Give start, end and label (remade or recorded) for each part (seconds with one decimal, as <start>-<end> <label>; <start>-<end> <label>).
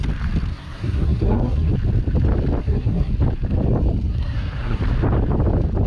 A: 0.0-0.5 recorded; 0.5-1.7 remade; 1.7-2.6 recorded; 2.6-3.1 remade; 3.1-4.1 recorded; 4.1-4.8 remade; 4.8-5.9 recorded